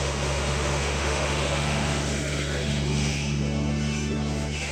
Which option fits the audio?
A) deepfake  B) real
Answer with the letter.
A